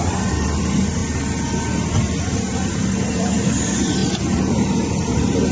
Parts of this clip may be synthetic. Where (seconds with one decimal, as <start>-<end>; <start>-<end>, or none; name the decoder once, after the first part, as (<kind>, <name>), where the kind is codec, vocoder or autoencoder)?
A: 0.0-1.0 (vocoder, BigVGAN v2); 2.2-4.0; 4.5-5.5